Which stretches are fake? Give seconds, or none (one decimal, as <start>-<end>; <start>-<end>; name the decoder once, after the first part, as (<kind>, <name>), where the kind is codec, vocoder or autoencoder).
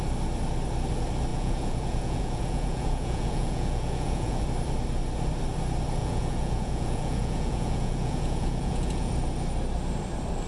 1.3-4.4 (vocoder, Vocos); 6.0-9.1